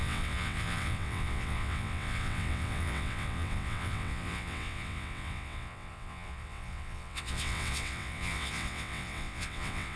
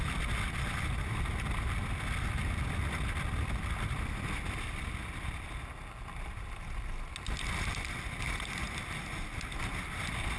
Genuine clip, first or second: second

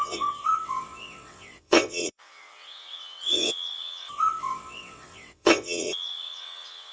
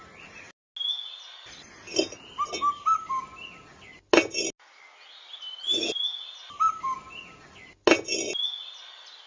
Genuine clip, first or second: second